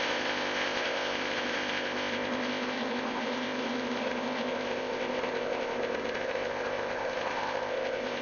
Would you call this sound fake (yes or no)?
yes